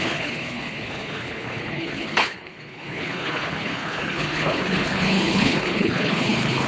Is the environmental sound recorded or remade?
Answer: remade